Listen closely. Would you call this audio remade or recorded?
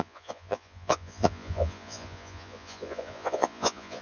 remade